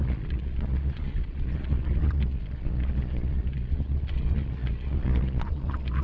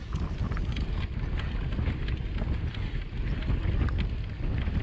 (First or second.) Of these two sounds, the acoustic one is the second